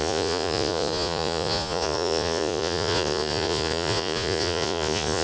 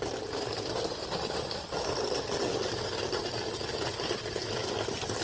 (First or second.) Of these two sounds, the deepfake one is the first